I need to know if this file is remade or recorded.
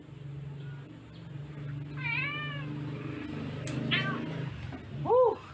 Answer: recorded